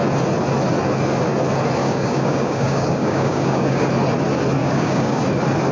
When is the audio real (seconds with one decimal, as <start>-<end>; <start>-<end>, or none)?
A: 0.0-1.8; 3.9-4.6; 5.2-5.7